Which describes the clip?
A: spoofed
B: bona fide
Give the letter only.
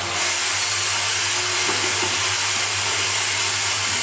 B